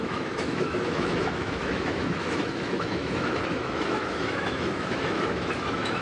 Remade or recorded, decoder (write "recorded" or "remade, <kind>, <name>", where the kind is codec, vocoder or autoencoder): remade, autoencoder, DAC-VAE